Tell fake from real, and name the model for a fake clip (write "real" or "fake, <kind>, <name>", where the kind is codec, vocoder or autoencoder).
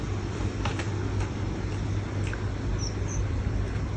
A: real